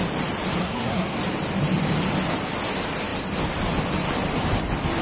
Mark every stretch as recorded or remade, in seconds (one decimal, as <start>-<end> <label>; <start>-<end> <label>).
0.0-0.6 recorded; 0.6-1.2 remade; 1.2-5.0 recorded